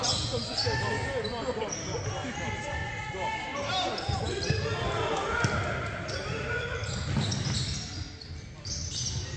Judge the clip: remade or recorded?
recorded